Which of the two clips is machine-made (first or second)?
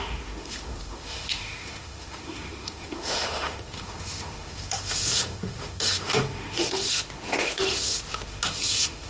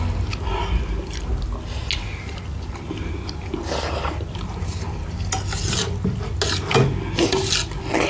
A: first